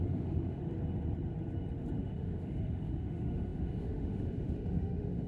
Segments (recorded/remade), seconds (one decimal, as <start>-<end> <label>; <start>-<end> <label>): 0.0-0.6 remade; 0.6-2.0 recorded; 2.0-5.3 remade